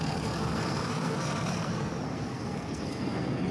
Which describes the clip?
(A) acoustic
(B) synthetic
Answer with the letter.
B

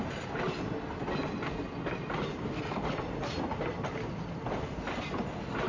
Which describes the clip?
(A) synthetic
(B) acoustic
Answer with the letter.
B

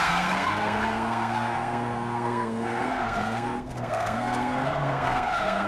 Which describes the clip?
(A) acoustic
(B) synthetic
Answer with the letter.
B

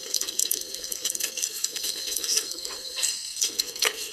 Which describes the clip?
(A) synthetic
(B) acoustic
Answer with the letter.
A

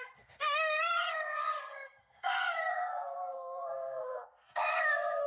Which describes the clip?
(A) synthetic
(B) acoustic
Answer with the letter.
A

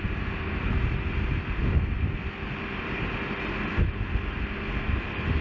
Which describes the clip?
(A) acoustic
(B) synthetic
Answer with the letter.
A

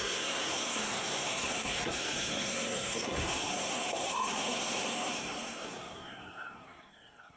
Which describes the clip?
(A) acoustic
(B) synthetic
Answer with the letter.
B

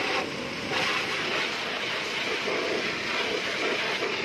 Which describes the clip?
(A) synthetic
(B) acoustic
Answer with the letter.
B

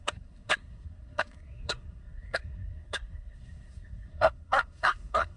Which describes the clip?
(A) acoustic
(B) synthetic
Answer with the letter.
B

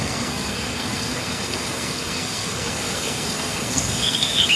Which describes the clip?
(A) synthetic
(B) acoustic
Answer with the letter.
A